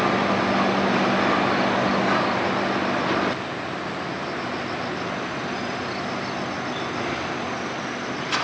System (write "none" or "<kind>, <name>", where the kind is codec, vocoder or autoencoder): none